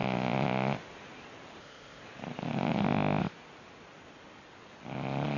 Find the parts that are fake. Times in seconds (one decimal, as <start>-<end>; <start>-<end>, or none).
1.6-2.0; 2.8-3.3